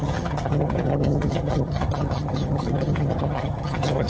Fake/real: fake